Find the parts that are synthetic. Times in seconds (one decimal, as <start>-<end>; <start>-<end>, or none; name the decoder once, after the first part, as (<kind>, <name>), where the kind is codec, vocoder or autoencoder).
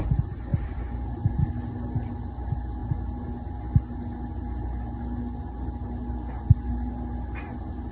none